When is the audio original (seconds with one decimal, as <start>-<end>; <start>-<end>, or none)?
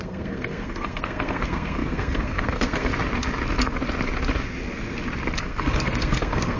2.9-5.4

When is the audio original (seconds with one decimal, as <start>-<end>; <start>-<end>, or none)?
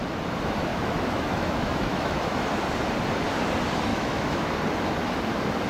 0.0-0.7; 2.4-3.9; 4.5-5.7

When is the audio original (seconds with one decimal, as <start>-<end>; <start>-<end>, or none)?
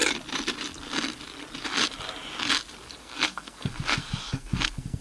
0.0-3.0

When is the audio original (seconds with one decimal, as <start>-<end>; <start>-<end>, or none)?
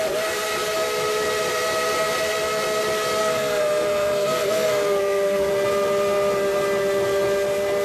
0.0-3.2; 5.5-7.8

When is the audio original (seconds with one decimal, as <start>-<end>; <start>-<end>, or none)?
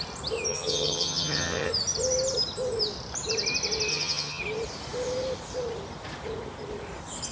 0.0-0.5; 1.7-3.9; 4.4-7.3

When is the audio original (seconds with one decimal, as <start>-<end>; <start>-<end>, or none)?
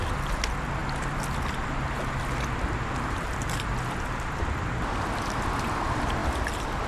0.0-6.9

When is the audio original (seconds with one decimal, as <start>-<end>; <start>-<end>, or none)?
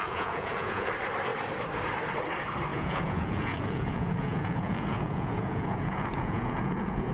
0.9-2.7